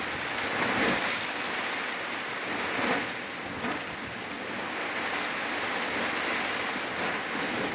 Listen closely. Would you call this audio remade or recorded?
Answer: recorded